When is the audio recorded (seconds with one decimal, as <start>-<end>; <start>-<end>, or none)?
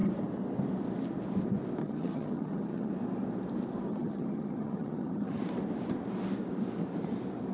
0.0-1.8; 2.9-3.9; 5.4-7.5